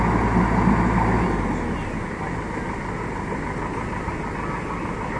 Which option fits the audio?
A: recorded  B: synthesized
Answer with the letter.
A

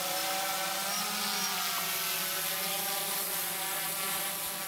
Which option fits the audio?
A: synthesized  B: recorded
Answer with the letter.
B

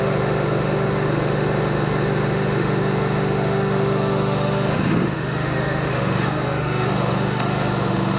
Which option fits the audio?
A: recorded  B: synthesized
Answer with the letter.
B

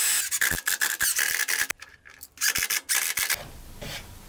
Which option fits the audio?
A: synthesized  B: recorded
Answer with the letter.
B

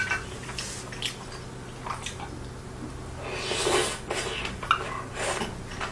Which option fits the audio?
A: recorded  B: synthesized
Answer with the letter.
A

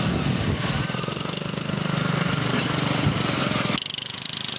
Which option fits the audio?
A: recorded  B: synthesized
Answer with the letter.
A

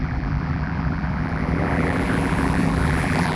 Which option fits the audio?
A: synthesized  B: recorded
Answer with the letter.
A